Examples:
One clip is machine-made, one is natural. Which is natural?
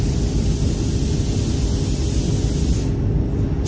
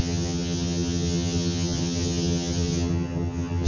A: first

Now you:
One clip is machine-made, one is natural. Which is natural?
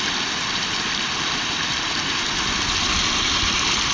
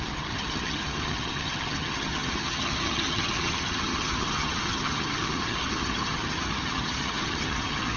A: first